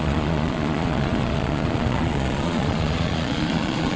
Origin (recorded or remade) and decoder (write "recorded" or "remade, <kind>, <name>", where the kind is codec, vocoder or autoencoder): remade, vocoder, Vocos